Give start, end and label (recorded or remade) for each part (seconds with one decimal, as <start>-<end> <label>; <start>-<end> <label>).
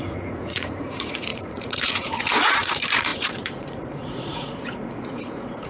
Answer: 0.0-5.7 remade